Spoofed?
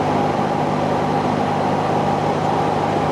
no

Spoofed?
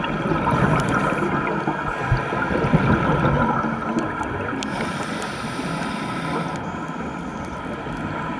no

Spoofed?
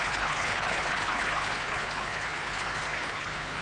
yes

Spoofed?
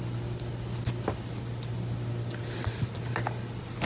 no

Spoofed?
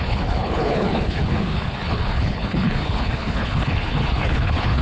yes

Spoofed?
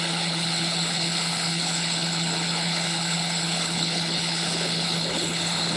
yes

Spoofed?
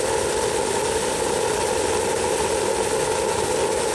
no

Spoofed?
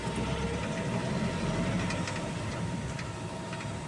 no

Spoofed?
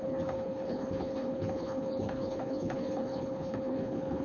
yes